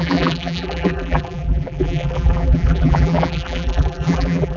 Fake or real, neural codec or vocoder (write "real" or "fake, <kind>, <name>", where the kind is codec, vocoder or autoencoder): fake, vocoder, BigVGAN v2